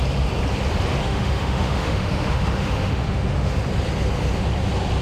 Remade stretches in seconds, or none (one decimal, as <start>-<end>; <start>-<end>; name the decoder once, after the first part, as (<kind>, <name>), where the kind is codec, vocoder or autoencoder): 1.0-3.6 (autoencoder, DAC-VAE)